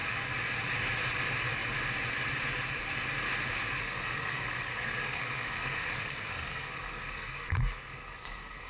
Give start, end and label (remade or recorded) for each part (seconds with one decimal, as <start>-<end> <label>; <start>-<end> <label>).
0.0-3.8 recorded; 3.8-8.7 remade